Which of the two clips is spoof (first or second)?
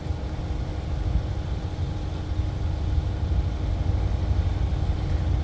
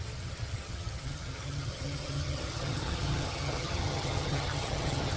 second